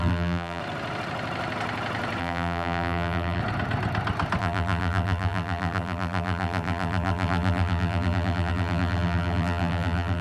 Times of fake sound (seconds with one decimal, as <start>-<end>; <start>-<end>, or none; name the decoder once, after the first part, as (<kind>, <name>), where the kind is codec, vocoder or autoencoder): 0.0-0.6 (vocoder, BigVGAN v2); 2.2-3.4; 4.4-10.2